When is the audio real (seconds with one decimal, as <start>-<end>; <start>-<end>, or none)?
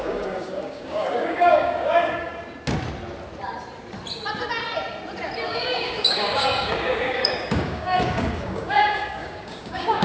2.3-5.5